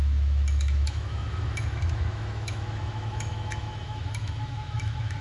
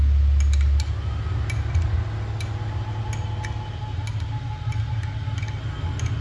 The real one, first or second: second